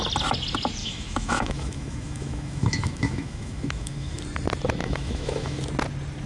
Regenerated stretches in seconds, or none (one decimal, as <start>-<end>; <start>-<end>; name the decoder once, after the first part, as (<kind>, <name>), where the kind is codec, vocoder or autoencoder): 0.8-4.2 (autoencoder, DAC-VAE); 4.8-5.6